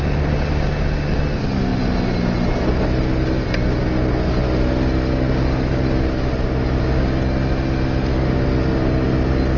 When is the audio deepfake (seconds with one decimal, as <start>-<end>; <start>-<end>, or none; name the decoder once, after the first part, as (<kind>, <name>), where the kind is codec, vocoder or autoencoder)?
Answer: none